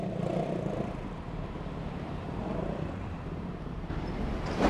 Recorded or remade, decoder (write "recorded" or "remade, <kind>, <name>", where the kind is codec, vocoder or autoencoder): remade, vocoder, BigVGAN v2